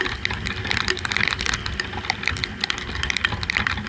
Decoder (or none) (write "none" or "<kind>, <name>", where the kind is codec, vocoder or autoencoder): none